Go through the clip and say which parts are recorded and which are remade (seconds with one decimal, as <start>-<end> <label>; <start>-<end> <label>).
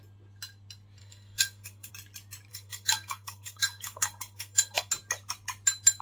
0.0-1.0 recorded; 1.0-1.9 remade; 1.9-2.5 recorded; 2.5-4.9 remade; 4.9-6.0 recorded